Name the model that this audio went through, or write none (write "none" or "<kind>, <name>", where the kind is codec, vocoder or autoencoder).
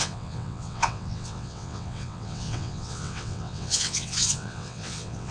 vocoder, WaveNeXt